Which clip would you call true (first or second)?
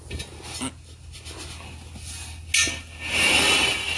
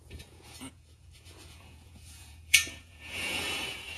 first